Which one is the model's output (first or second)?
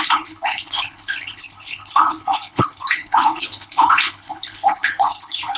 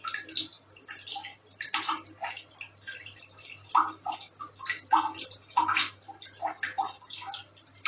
first